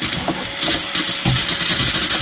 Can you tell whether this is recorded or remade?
recorded